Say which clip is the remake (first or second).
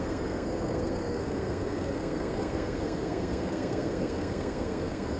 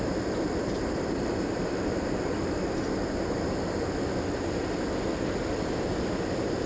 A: first